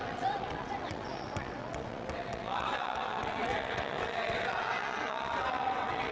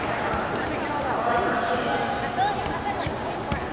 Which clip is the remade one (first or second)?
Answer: first